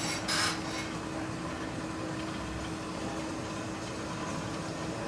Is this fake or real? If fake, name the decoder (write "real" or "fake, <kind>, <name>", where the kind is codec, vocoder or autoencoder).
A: real